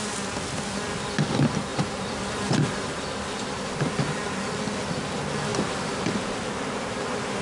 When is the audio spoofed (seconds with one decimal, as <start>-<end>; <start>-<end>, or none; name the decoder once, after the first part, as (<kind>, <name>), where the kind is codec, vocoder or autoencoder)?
1.7-3.0 (vocoder, BigVGAN v2); 5.5-7.0